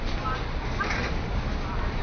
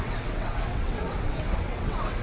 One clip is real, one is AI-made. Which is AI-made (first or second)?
second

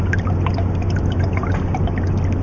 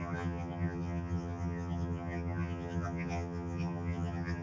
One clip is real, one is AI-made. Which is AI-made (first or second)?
second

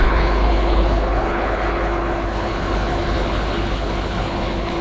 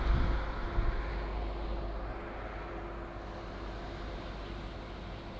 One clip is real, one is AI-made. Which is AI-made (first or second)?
first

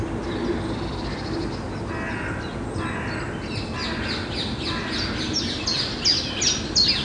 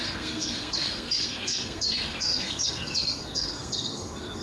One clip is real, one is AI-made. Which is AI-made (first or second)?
second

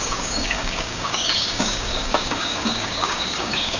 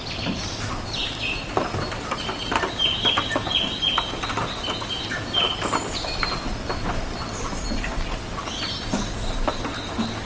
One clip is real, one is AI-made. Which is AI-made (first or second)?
first